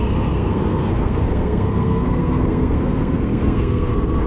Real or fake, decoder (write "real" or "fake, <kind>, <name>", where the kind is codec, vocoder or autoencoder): fake, codec, SNAC